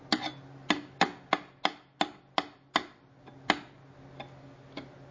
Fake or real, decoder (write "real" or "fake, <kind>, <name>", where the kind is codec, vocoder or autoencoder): real